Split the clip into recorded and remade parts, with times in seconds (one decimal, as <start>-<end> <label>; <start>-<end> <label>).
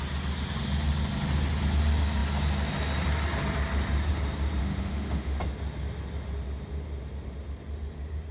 0.0-4.6 recorded; 4.6-5.4 remade; 5.4-8.3 recorded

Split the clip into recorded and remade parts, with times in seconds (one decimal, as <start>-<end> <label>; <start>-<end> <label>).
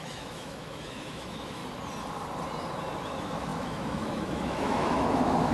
0.0-1.6 remade; 1.6-3.1 recorded; 3.1-5.5 remade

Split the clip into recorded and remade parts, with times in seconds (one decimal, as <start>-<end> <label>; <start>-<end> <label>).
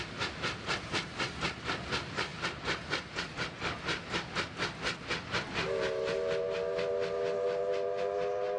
0.0-8.6 recorded